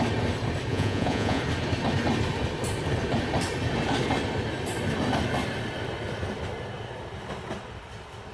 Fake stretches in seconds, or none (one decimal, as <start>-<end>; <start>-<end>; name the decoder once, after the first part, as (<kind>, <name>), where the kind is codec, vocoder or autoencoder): 0.7-1.4 (vocoder, Vocos)